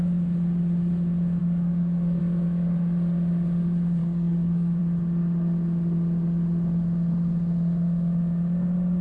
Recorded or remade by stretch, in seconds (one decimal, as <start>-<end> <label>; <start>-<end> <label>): 0.0-1.4 recorded; 1.4-2.2 remade; 2.2-4.0 recorded; 4.0-4.8 remade; 4.8-9.0 recorded